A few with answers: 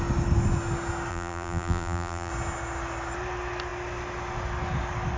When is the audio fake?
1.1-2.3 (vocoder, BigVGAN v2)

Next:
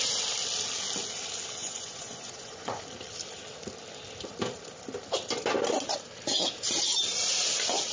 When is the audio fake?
1.6-2.8 (vocoder, Vocos)

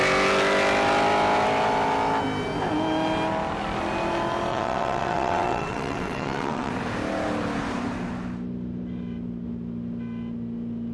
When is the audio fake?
4.5-6.7 (vocoder, WaveNeXt)